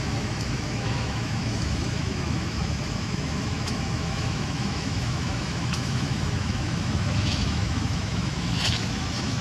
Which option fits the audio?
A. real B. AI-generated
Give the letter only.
B